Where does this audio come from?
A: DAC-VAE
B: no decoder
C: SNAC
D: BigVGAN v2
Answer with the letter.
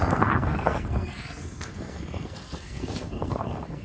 C